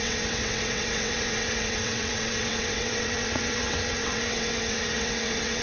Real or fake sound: fake